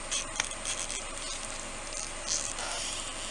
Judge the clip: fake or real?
real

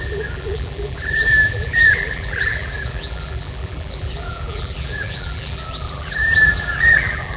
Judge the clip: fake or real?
fake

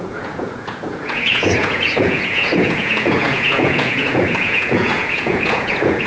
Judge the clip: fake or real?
fake